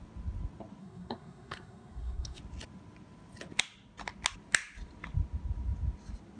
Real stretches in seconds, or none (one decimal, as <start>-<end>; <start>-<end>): 0.0-0.8; 2.4-6.4